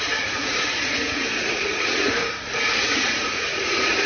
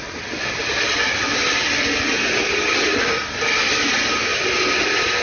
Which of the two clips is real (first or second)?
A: second